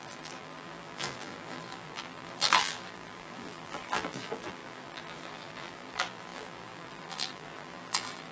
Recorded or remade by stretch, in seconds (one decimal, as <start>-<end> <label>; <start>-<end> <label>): 0.0-8.3 remade